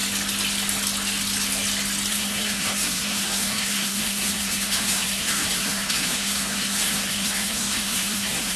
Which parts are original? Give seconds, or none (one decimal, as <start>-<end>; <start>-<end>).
0.0-2.1